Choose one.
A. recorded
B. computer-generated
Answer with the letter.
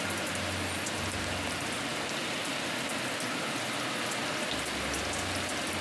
A